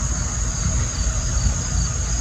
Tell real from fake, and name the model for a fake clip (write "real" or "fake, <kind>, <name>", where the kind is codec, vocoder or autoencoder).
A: real